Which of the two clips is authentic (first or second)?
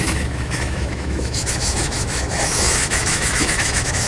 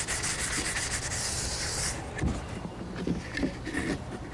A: second